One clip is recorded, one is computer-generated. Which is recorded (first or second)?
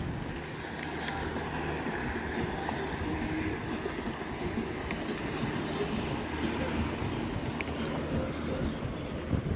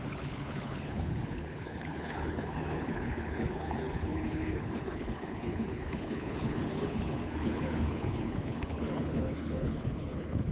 first